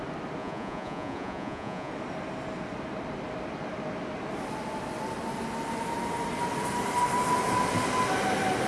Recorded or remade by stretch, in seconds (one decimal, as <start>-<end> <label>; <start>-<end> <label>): 0.0-0.4 recorded; 0.4-1.9 remade; 1.9-8.7 recorded